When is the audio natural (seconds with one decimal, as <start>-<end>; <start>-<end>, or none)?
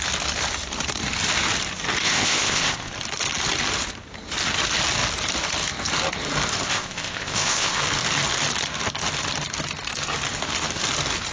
0.0-2.0; 2.9-6.7; 7.8-11.3